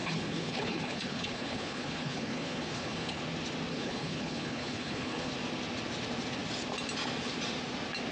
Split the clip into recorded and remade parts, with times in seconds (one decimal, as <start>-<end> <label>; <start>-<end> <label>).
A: 0.0-3.2 remade; 3.2-3.7 recorded; 3.7-5.3 remade; 5.3-8.1 recorded